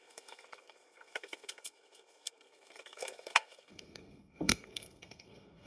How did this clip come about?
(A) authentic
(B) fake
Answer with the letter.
B